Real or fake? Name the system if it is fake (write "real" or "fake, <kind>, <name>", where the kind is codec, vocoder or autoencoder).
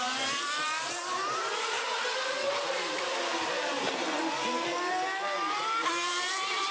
fake, vocoder, BigVGAN v2